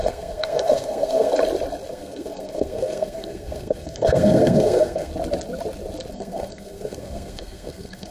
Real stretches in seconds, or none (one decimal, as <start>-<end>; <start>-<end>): 1.3-1.9; 5.1-6.1